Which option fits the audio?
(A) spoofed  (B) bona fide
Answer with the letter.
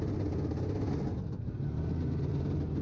B